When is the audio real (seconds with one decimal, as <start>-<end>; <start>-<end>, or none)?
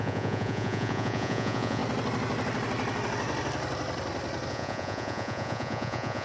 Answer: 1.8-4.5